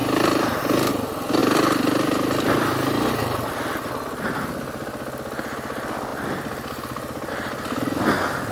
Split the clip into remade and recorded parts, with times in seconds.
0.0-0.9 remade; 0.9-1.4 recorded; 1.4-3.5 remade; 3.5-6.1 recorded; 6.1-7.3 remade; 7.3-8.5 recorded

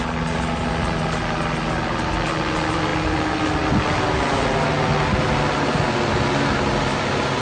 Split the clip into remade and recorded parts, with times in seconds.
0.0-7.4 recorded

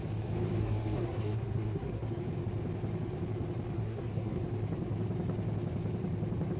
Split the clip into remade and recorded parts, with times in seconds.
0.0-0.6 recorded; 0.6-2.2 remade; 2.2-3.8 recorded; 3.8-4.4 remade; 4.4-6.6 recorded